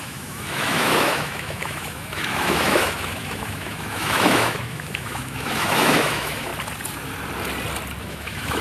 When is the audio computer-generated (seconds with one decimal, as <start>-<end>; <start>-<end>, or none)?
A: 0.0-6.5; 8.0-8.6

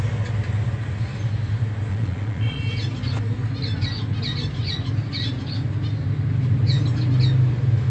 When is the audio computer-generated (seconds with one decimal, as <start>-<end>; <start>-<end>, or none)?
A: 1.9-2.6

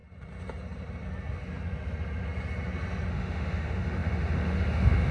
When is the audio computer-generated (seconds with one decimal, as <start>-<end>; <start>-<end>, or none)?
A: 3.1-5.1